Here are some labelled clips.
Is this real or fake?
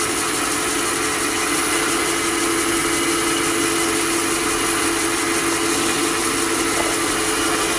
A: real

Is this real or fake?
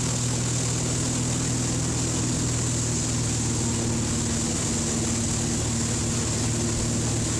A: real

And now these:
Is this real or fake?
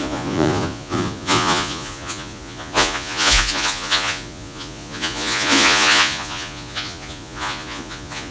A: fake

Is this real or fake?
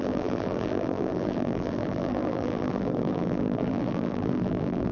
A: fake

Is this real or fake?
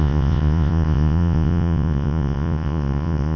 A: fake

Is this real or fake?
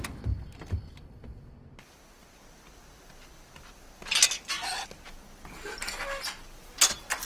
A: real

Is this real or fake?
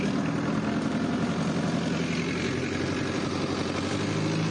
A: real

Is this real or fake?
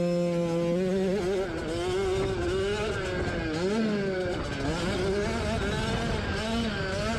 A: real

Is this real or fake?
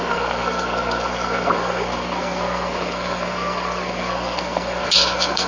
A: fake